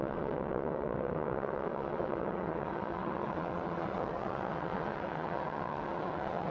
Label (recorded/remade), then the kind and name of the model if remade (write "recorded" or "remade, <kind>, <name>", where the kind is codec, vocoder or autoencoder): remade, vocoder, WaveNeXt